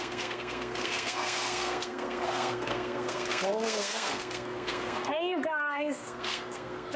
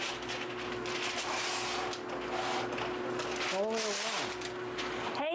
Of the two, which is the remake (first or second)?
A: first